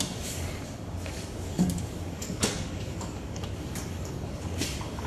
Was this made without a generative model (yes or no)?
no